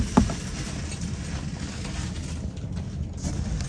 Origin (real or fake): real